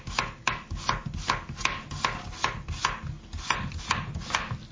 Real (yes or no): yes